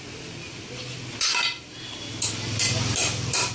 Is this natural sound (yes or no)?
yes